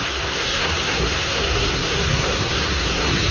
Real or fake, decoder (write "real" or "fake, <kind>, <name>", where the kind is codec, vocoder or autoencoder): fake, codec, SNAC